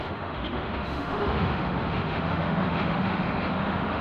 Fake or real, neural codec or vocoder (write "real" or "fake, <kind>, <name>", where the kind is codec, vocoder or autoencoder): fake, autoencoder, DAC-VAE